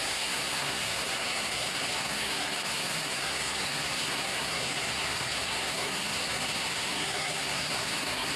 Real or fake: fake